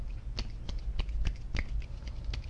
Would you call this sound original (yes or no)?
yes